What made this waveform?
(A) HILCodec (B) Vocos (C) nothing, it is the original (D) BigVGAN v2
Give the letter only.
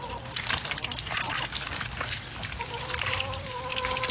C